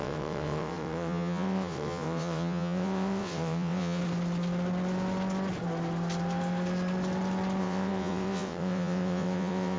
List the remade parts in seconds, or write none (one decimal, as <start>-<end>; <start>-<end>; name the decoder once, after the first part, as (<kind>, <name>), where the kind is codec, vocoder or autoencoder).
0.0-4.0 (vocoder, WaveNeXt); 7.6-9.8